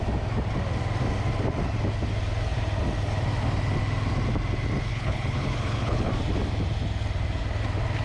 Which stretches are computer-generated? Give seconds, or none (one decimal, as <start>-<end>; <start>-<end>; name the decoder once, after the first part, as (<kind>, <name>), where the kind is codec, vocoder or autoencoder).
4.9-6.1 (codec, HILCodec)